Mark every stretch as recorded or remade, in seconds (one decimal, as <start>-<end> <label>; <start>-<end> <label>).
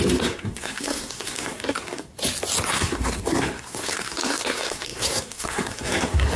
0.0-2.1 remade; 2.1-2.7 recorded; 2.7-6.4 remade